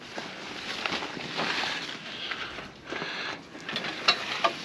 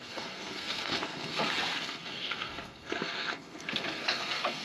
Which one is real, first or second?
first